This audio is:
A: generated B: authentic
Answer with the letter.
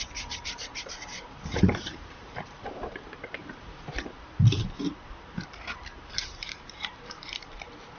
A